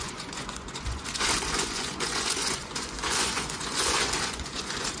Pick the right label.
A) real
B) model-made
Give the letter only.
B